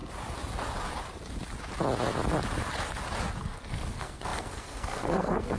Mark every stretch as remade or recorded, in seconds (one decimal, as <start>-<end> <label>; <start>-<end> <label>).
0.0-3.4 recorded; 3.4-5.6 remade